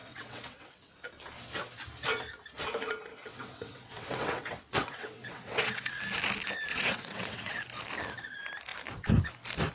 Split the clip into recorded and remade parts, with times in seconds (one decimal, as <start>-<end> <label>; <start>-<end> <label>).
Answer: 0.0-0.9 remade; 0.9-3.1 recorded; 3.1-6.0 remade; 6.0-6.7 recorded; 6.7-7.6 remade; 7.6-9.7 recorded